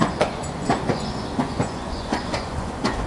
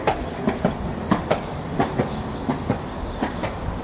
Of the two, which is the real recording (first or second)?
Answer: second